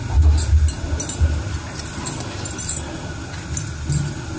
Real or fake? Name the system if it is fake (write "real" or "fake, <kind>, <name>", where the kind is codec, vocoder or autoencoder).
real